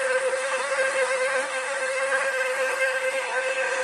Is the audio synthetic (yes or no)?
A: yes